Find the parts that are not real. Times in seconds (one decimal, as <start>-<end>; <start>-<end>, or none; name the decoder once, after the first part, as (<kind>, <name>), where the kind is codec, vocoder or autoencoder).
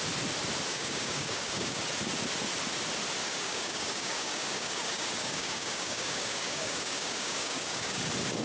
0.7-1.8 (codec, DAC); 3.2-8.0